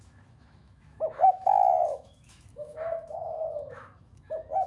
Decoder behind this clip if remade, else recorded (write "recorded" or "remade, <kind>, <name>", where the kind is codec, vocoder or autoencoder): remade, autoencoder, DAC-VAE